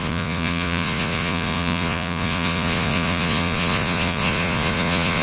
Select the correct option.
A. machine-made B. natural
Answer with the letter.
A